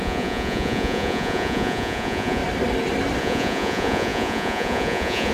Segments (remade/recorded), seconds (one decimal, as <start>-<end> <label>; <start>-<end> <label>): 0.0-2.4 remade; 2.4-3.2 recorded; 3.2-5.3 remade